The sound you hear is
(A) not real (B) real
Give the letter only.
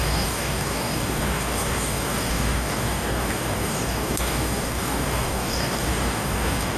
A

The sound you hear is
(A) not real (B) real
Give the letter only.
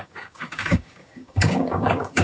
A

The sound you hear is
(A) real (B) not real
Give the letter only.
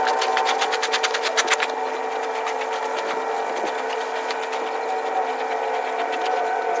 A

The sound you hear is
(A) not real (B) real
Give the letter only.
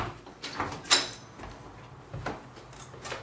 B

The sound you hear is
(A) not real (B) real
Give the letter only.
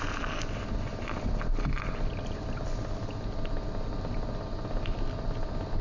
B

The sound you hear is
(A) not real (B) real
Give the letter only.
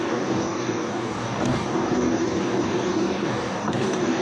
A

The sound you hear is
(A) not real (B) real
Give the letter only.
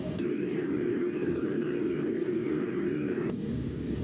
A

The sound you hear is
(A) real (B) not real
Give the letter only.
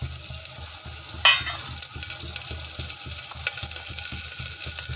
A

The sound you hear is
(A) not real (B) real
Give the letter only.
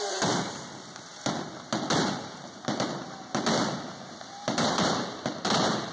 B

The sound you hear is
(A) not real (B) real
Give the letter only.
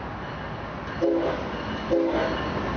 B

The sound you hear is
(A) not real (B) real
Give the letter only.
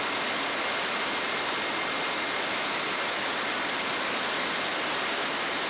B